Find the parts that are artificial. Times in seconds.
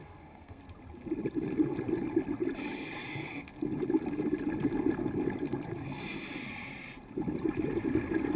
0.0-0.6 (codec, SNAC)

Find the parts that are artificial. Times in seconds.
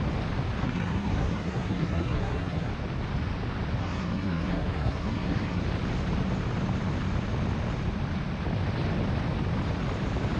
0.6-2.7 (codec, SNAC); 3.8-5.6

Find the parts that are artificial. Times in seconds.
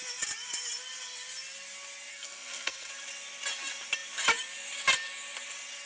2.1-2.9 (codec, SNAC)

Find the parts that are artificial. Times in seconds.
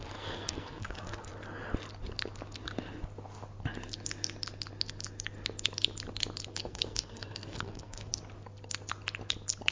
0.0-1.3 (codec, SNAC); 6.5-8.1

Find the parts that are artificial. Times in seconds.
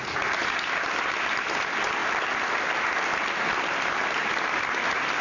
none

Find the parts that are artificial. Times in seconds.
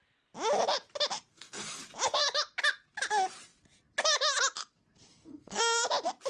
1.3-1.8 (codec, SNAC); 5.1-5.6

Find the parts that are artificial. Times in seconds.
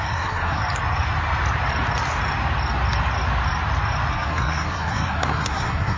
0.0-0.6 (codec, SNAC); 4.1-6.0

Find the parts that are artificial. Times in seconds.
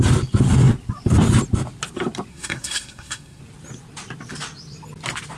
2.3-3.4 (codec, SNAC)